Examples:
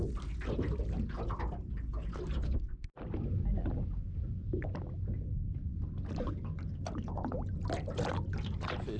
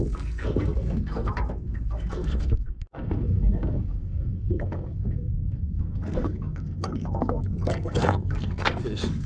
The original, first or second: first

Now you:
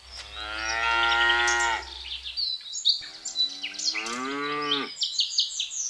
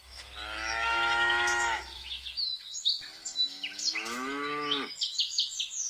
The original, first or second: first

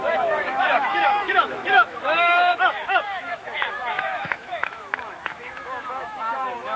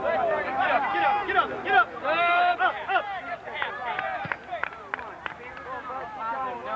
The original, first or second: second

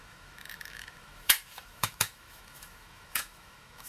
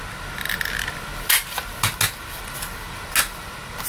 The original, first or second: second